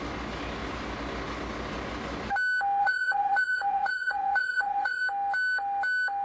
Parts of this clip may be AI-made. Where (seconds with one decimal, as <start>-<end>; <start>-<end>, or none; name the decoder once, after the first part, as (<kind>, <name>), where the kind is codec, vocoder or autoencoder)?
2.8-5.0 (vocoder, Vocos)